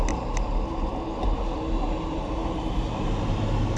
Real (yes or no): yes